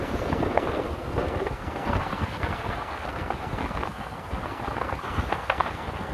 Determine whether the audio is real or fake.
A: fake